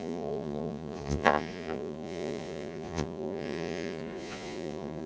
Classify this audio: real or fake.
fake